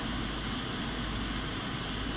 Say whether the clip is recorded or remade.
recorded